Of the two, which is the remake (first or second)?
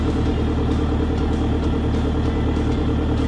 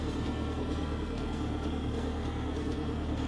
second